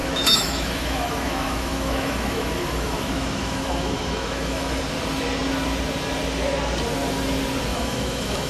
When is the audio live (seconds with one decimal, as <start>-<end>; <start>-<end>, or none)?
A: 4.8-7.7